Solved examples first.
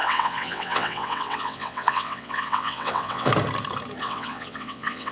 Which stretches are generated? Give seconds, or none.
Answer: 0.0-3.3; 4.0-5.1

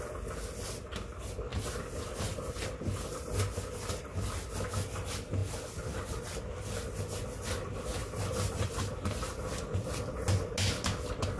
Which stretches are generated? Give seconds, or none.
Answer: 8.0-8.9

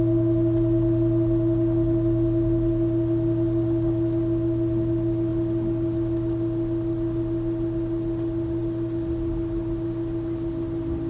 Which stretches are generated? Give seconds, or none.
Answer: none

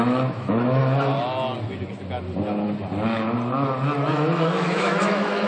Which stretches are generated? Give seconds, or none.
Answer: 0.0-0.8; 4.1-5.5

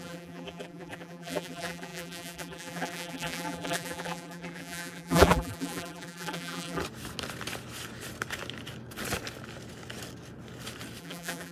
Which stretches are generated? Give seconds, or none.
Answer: 0.0-6.8; 11.0-11.5

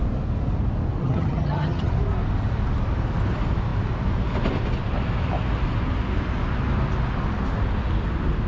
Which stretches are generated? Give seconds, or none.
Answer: 1.0-1.9

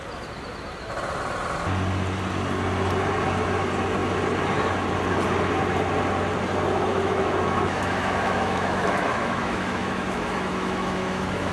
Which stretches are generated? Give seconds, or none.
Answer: 6.9-11.5

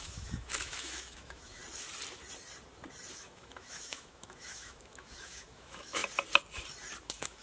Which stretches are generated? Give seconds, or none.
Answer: 0.0-1.6; 3.1-6.0; 7.0-7.4